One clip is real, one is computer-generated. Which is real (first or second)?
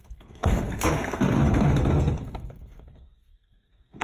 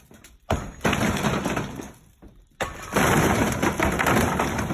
second